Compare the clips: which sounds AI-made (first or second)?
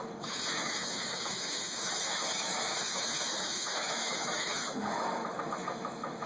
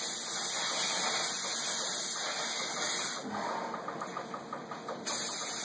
first